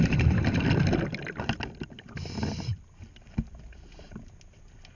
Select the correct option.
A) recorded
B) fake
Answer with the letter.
A